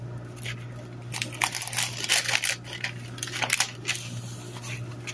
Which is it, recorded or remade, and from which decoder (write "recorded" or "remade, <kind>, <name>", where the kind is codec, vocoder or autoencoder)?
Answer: remade, vocoder, BigVGAN v2